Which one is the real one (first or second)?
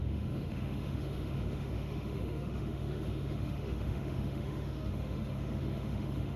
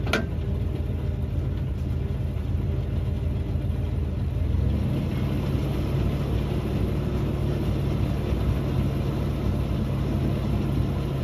second